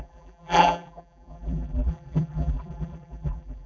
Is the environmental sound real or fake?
fake